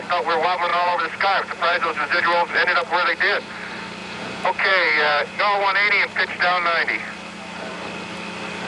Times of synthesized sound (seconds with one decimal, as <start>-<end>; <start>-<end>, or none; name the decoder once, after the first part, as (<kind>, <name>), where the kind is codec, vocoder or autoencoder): 0.7-2.2 (vocoder, Vocos); 4.0-5.4